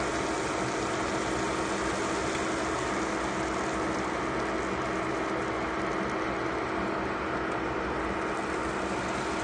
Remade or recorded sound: recorded